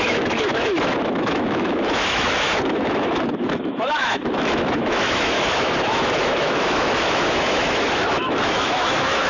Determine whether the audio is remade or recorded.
remade